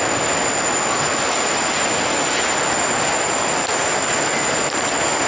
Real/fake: real